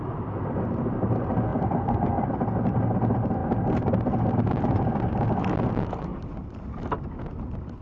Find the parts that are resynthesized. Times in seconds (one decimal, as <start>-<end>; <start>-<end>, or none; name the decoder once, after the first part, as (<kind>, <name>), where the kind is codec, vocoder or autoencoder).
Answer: 1.5-2.3 (vocoder, BigVGAN v2); 6.1-6.8